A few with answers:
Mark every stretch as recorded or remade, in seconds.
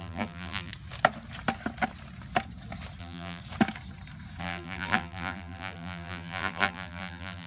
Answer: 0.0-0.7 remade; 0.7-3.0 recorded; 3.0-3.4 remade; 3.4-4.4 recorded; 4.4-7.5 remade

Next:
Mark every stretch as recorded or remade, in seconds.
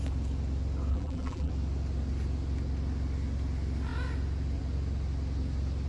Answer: 0.0-0.9 recorded; 0.9-1.5 remade; 1.5-5.9 recorded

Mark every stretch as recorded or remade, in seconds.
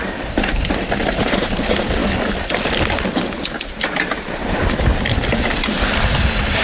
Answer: 0.0-2.0 remade; 2.0-3.9 recorded; 3.9-4.9 remade; 4.9-6.0 recorded; 6.0-6.6 remade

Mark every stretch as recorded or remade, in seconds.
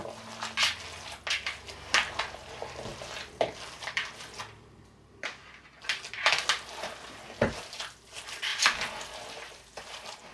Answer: 0.0-2.9 recorded; 2.9-4.8 remade; 4.8-8.5 recorded; 8.5-10.3 remade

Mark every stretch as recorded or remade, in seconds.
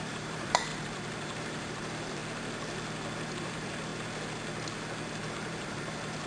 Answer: 0.0-2.2 remade; 2.2-3.4 recorded; 3.4-3.9 remade; 3.9-5.3 recorded; 5.3-6.3 remade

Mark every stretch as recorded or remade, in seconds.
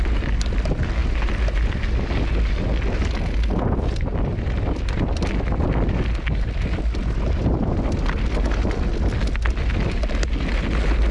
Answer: 0.0-4.1 recorded; 4.1-5.1 remade; 5.1-11.1 recorded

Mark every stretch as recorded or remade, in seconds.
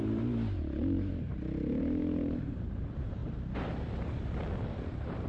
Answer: 0.0-1.3 remade; 1.3-2.4 recorded; 2.4-3.2 remade; 3.2-4.2 recorded; 4.2-5.3 remade